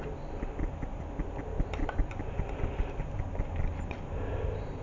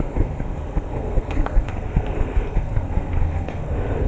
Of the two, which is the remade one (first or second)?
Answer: second